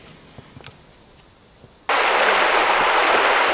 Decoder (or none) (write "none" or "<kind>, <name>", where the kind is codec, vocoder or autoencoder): none